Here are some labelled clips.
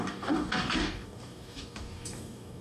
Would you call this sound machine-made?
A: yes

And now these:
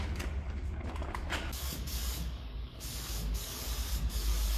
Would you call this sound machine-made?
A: yes